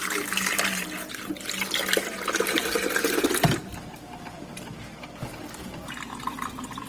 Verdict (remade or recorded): recorded